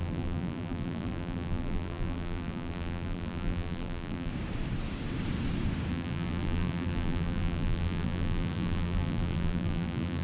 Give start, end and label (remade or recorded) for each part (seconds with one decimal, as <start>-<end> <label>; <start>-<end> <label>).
0.0-4.3 remade; 4.3-5.9 recorded; 5.9-10.2 remade